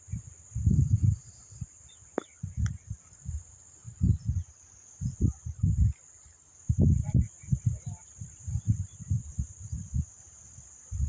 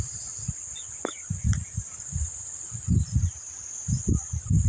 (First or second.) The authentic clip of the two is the first